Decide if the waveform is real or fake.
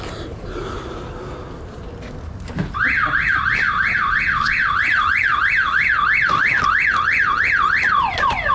real